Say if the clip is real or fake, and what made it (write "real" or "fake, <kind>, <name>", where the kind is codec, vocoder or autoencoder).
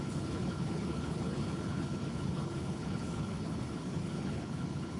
fake, codec, HILCodec